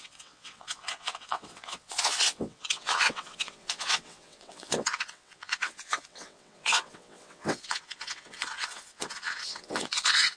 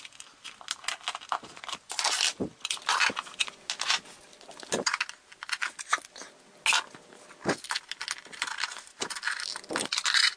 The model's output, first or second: first